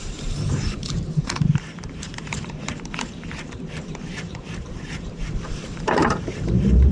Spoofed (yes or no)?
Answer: yes